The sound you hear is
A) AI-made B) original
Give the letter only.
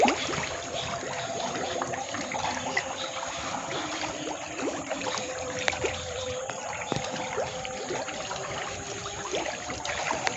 A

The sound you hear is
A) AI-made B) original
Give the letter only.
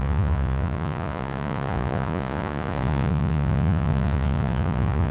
A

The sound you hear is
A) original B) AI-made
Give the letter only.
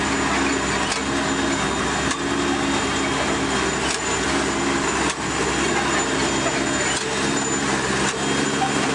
A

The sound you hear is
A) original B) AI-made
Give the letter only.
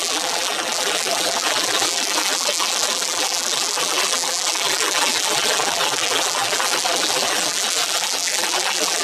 B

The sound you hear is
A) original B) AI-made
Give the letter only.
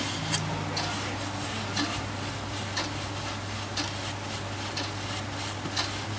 A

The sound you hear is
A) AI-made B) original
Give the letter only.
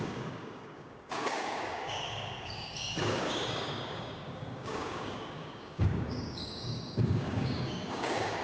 A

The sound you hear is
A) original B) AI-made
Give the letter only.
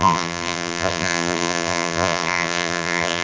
B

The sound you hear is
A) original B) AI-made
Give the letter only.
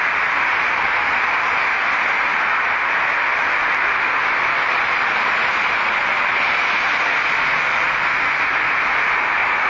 A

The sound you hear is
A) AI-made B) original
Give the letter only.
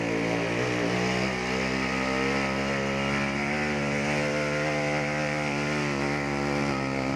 B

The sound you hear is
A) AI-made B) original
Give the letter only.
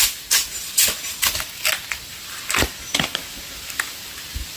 B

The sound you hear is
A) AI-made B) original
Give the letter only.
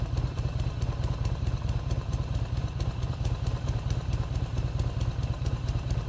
A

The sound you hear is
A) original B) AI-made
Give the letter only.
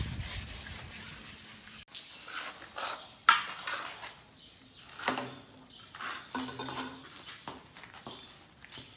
A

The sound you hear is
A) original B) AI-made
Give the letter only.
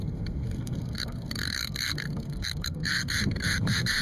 B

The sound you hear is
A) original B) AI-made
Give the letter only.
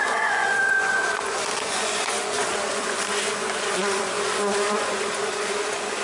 B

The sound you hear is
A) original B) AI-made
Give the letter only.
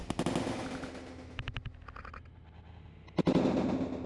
A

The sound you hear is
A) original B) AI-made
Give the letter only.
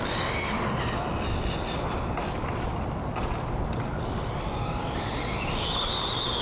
A